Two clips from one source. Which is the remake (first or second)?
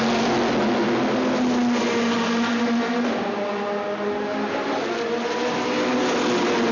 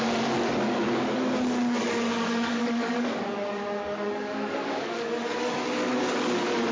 second